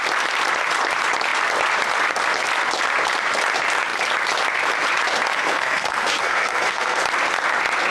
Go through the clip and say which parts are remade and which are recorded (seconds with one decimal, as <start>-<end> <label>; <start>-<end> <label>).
0.0-5.3 recorded; 5.3-7.0 remade; 7.0-7.9 recorded